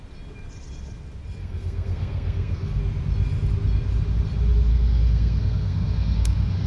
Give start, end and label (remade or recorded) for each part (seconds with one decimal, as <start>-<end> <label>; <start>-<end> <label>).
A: 0.0-1.4 recorded; 1.4-2.8 remade; 2.8-4.7 recorded; 4.7-6.7 remade

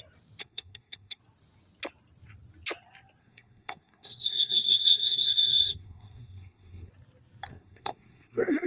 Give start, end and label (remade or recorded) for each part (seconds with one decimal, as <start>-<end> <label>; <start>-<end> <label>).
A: 0.0-0.4 recorded; 0.4-1.2 remade; 1.2-3.2 recorded; 3.2-6.9 remade; 6.9-7.5 recorded; 7.5-8.7 remade

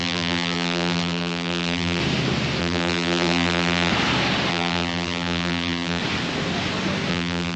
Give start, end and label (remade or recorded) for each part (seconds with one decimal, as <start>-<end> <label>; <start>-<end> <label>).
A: 0.0-2.0 remade; 2.0-2.6 recorded; 2.6-3.9 remade; 3.9-4.5 recorded; 4.5-6.0 remade; 6.0-7.1 recorded; 7.1-7.6 remade